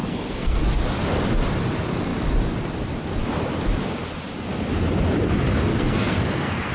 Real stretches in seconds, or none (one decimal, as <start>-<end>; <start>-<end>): 0.6-5.7